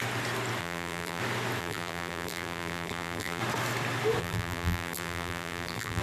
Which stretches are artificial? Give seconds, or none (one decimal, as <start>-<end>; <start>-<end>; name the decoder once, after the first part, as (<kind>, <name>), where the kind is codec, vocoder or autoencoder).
0.6-1.2 (vocoder, BigVGAN v2); 1.6-3.4; 4.2-6.0